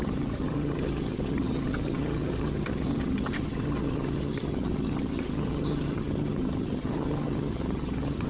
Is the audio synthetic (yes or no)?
yes